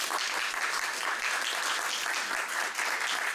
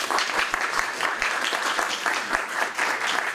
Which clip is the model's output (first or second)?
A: second